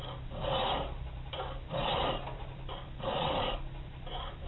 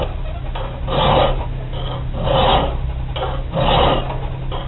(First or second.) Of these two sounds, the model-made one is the first